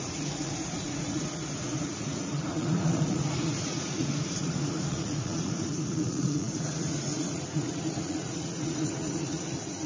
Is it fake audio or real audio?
fake